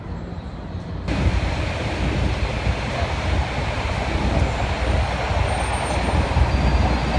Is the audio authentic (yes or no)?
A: yes